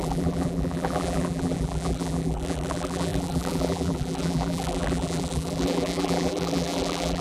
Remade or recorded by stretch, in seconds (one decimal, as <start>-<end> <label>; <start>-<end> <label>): 0.0-7.2 remade